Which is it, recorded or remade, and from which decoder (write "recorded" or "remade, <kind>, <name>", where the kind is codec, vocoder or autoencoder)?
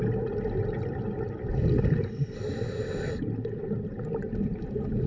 recorded